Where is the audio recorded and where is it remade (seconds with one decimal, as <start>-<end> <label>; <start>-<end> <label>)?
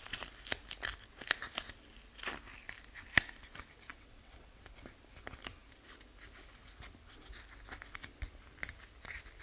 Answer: 0.0-3.9 recorded; 3.9-4.6 remade; 4.6-9.4 recorded